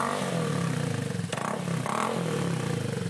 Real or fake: real